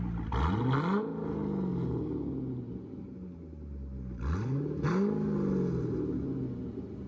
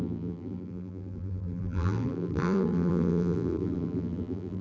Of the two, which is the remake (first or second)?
second